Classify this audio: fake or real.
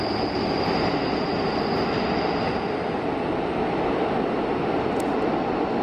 real